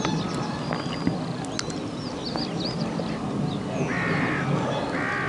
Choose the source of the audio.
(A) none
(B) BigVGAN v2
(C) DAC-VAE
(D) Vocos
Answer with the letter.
A